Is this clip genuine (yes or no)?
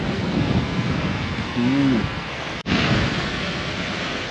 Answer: no